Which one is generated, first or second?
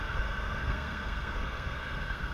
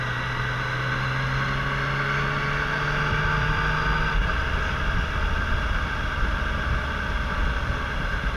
first